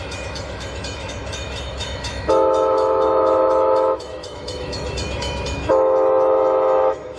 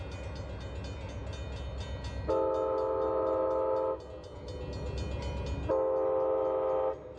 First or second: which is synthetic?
first